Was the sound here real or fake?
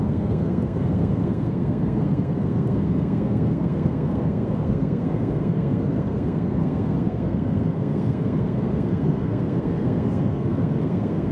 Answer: fake